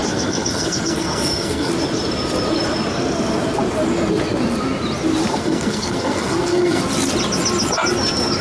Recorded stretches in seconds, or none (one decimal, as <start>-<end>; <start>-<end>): 1.7-5.3; 6.8-8.4